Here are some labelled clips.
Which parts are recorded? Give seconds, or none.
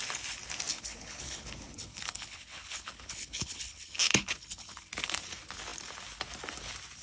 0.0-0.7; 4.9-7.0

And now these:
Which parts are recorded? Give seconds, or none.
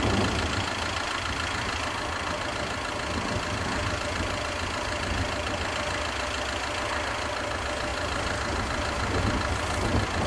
0.0-7.9; 9.2-10.3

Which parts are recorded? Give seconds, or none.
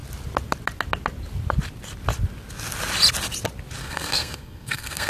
0.0-3.8